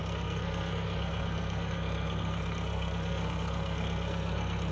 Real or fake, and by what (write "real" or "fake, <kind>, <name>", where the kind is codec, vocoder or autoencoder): fake, codec, SNAC